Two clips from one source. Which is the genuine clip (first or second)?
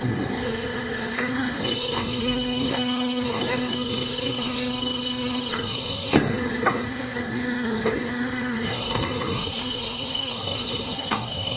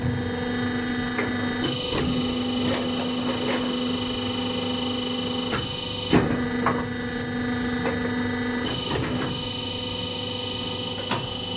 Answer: second